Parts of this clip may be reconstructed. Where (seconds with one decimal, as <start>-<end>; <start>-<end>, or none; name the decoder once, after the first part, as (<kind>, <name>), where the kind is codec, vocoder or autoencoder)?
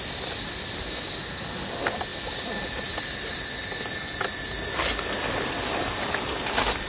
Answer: none